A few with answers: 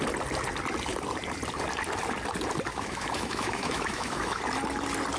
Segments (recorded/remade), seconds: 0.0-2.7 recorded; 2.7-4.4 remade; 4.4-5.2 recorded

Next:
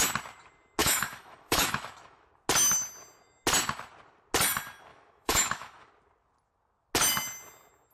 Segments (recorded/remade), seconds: 0.0-0.8 recorded; 0.8-2.3 remade; 2.3-4.9 recorded; 4.9-5.9 remade; 5.9-7.9 recorded

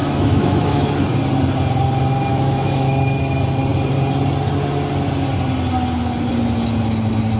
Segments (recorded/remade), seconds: 0.0-0.9 remade; 0.9-2.3 recorded; 2.3-3.2 remade; 3.2-7.4 recorded

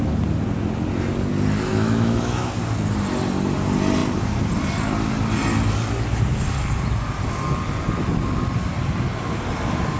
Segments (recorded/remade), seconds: 0.0-1.7 recorded; 1.7-2.5 remade; 2.5-10.0 recorded

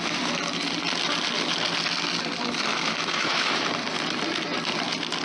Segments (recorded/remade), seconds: 0.0-2.7 recorded; 2.7-3.7 remade; 3.7-5.2 recorded

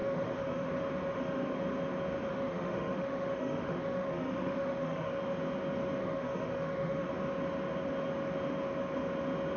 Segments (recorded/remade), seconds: 0.0-0.7 remade; 0.7-1.1 recorded; 1.1-1.6 remade; 1.6-2.3 recorded; 2.3-5.2 remade; 5.2-6.0 recorded; 6.0-7.1 remade; 7.1-9.6 recorded

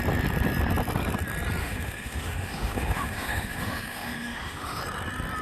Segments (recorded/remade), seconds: 0.0-1.6 recorded; 1.6-4.8 remade; 4.8-5.4 recorded

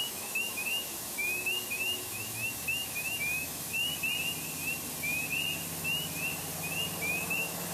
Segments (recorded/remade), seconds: 0.0-3.9 remade; 3.9-7.1 recorded; 7.1-7.7 remade